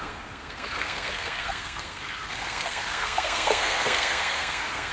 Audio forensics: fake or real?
fake